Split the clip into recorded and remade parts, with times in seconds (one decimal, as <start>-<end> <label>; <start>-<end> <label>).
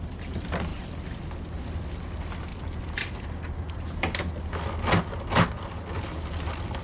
0.0-6.8 recorded